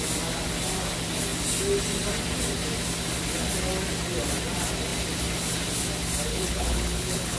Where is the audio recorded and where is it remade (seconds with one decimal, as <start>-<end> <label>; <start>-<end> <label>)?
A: 0.0-6.3 recorded; 6.3-7.4 remade